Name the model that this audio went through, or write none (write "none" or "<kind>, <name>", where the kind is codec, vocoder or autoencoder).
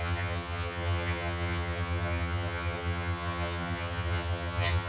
vocoder, HiFi-GAN